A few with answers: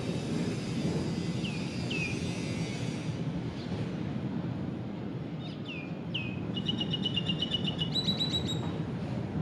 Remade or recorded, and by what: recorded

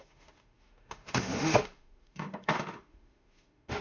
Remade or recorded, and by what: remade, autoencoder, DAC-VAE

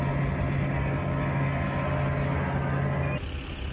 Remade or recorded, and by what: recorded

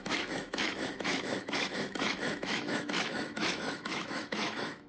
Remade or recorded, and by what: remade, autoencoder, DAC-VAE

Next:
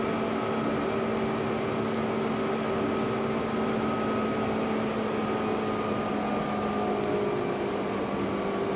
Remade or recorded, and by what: recorded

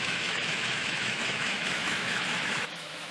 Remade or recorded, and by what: remade, autoencoder, DAC-VAE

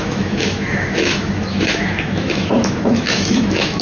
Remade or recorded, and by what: remade, autoencoder, DAC-VAE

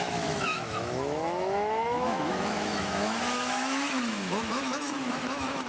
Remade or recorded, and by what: remade, autoencoder, DAC-VAE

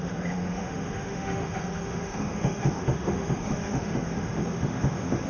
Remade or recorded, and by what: remade, autoencoder, DAC-VAE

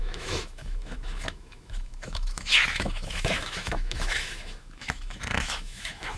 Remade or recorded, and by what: remade, autoencoder, DAC-VAE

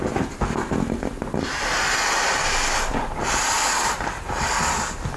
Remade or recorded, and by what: recorded